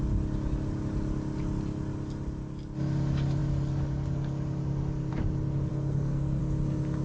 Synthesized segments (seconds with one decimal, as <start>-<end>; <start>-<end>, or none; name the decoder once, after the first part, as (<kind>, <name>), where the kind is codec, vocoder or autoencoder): 5.7-6.4 (codec, SNAC)